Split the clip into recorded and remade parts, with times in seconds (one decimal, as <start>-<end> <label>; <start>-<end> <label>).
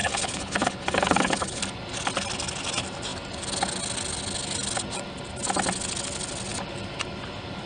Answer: 0.0-1.6 remade; 1.6-7.7 recorded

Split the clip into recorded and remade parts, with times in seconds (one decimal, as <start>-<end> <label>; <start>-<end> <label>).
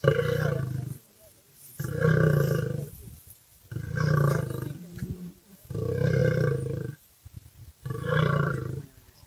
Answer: 0.0-1.3 recorded; 1.3-1.9 remade; 1.9-6.2 recorded; 6.2-8.8 remade; 8.8-9.3 recorded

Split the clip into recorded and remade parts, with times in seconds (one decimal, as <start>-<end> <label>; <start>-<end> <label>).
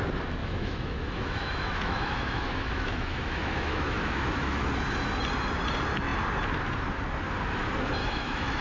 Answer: 0.0-0.4 recorded; 0.4-4.7 remade; 4.7-8.0 recorded; 8.0-8.6 remade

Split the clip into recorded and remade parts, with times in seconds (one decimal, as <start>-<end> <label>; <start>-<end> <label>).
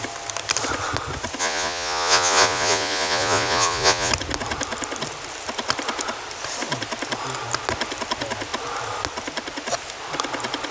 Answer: 0.0-1.4 recorded; 1.4-4.1 remade; 4.1-10.7 recorded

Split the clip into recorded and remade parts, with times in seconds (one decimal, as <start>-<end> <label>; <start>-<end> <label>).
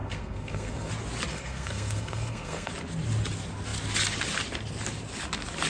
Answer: 0.0-0.9 remade; 0.9-1.3 recorded; 1.3-2.7 remade; 2.7-5.7 recorded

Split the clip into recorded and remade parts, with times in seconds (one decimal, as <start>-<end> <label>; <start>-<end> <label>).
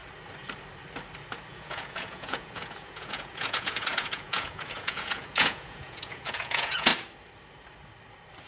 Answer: 0.0-1.5 recorded; 1.5-6.9 remade; 6.9-8.5 recorded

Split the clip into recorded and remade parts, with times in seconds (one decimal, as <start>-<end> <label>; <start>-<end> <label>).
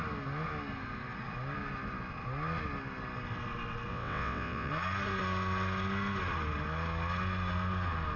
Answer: 0.0-3.9 recorded; 3.9-4.7 remade; 4.7-8.2 recorded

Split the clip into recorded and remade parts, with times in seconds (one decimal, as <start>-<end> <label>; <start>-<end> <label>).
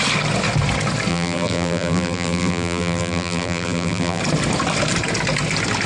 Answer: 0.0-1.1 recorded; 1.1-4.2 remade; 4.2-5.9 recorded